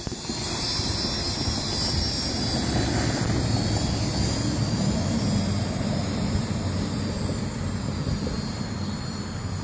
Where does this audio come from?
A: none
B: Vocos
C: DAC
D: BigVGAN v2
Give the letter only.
A